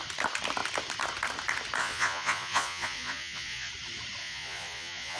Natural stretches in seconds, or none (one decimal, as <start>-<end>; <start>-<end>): 0.0-1.8; 3.7-4.2